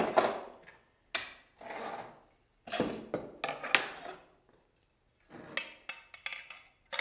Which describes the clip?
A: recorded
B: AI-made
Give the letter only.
A